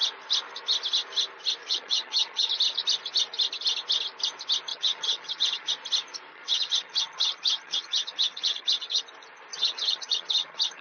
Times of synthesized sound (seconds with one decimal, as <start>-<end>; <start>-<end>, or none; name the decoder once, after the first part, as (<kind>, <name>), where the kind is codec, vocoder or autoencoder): 1.6-2.5 (vocoder, HiFi-GAN); 4.7-5.7; 6.3-9.0; 9.5-10.8